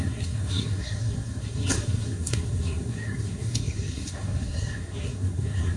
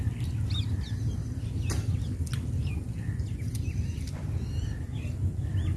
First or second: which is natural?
second